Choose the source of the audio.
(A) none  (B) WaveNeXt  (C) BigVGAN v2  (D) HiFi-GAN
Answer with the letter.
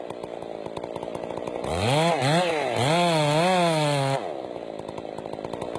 A